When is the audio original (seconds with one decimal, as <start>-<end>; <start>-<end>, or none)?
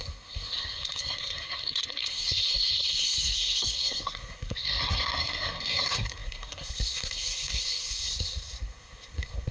none